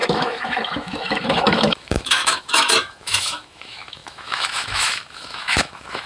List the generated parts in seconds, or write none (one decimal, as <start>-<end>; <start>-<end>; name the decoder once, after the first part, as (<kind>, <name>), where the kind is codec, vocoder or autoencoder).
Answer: 0.0-6.1 (autoencoder, DAC-VAE)